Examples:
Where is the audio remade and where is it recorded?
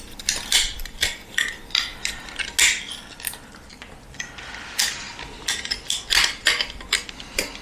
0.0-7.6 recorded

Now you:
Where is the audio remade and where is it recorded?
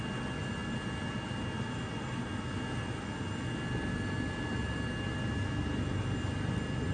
0.0-6.9 recorded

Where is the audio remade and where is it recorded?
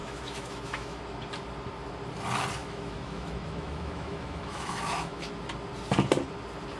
0.0-1.0 remade; 1.0-2.6 recorded; 2.6-5.3 remade; 5.3-6.8 recorded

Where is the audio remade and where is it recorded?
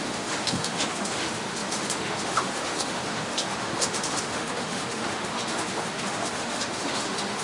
0.0-7.4 remade